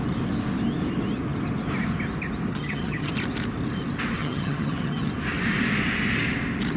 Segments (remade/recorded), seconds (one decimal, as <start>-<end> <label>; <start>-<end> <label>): 0.0-2.5 recorded; 2.5-3.1 remade; 3.1-4.2 recorded; 4.2-5.1 remade; 5.1-6.8 recorded